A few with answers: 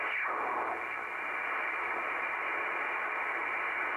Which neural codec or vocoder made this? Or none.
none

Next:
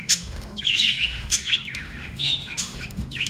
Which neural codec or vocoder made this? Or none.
autoencoder, DAC-VAE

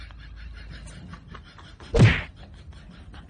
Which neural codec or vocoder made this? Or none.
none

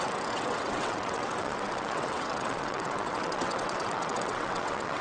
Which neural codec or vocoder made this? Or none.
vocoder, WaveNeXt